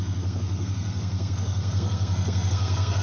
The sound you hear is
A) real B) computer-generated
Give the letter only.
B